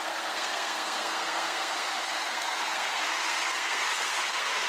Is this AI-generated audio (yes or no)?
yes